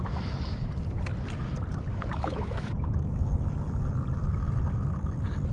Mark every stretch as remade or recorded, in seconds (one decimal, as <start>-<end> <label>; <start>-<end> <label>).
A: 0.0-1.9 recorded; 1.9-3.2 remade; 3.2-5.5 recorded